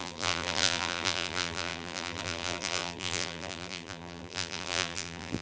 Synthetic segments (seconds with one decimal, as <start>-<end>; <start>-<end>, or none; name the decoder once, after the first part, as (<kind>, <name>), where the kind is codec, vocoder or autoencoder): 0.0-5.4 (vocoder, BigVGAN v2)